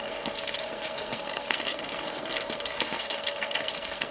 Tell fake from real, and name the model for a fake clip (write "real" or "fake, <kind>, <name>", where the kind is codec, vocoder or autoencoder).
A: fake, codec, SNAC